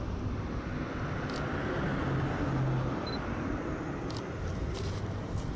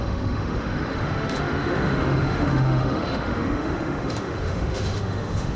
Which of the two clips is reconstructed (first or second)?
second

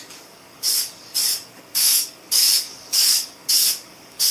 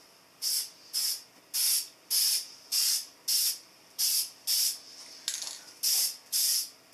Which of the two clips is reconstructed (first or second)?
first